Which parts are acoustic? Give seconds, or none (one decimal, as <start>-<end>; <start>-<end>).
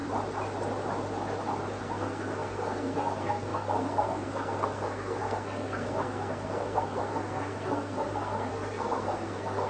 0.0-1.8